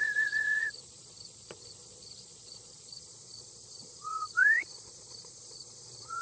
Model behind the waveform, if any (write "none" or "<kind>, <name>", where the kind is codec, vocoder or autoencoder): vocoder, Vocos